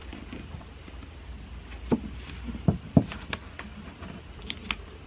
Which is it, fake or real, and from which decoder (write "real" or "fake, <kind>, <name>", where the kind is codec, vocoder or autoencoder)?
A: real